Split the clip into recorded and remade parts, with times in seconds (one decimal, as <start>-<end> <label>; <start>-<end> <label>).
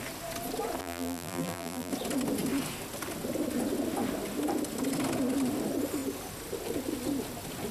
0.0-0.8 recorded; 0.8-1.9 remade; 1.9-7.7 recorded